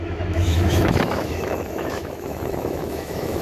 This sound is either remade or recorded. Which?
remade